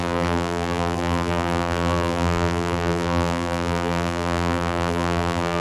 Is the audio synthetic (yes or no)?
yes